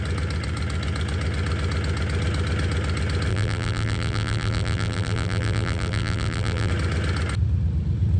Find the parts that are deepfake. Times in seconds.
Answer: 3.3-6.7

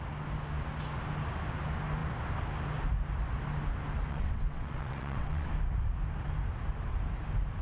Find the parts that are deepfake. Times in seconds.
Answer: 4.1-5.5